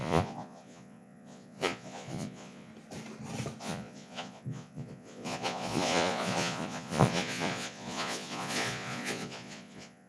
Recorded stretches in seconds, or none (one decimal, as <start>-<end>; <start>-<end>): 2.7-3.6